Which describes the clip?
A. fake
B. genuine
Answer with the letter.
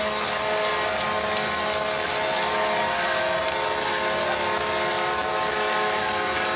B